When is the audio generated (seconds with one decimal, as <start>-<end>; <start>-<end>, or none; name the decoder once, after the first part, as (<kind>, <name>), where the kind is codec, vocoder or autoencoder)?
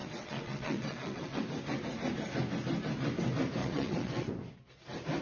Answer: 0.0-1.4 (vocoder, WaveNeXt); 3.6-4.3